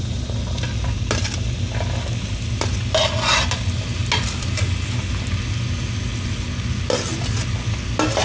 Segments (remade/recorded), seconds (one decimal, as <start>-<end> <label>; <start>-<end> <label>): 0.0-8.2 recorded